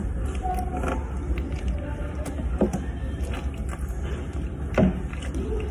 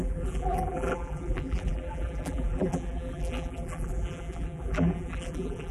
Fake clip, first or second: second